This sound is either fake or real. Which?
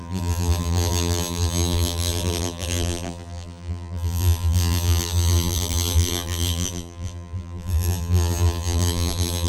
fake